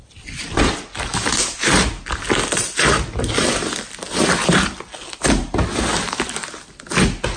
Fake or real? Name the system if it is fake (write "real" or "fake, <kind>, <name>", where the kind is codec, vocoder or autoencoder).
real